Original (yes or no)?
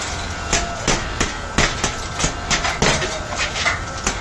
yes